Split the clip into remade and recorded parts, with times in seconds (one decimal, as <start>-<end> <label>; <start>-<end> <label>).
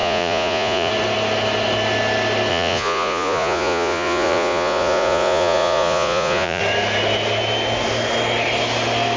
0.0-0.9 remade; 0.9-2.5 recorded; 2.5-6.6 remade; 6.6-9.2 recorded